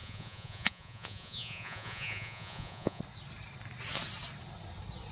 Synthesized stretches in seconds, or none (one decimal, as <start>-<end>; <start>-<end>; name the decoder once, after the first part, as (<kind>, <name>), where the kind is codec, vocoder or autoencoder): 0.0-3.0 (vocoder, Vocos)